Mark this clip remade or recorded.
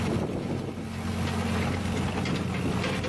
recorded